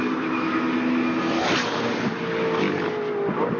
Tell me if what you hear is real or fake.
real